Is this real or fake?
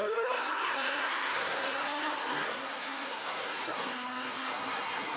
fake